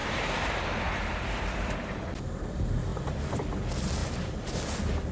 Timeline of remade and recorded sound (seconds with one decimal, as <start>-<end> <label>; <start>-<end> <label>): 0.0-2.0 remade; 2.0-5.1 recorded